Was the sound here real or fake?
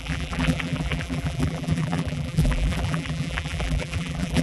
fake